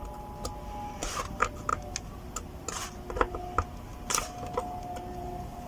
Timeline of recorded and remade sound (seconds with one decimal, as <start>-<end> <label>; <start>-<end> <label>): 0.0-5.7 recorded